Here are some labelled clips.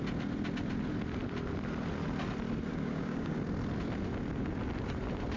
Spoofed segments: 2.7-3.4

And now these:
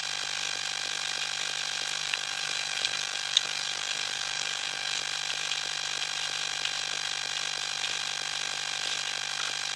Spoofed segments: 2.0-5.0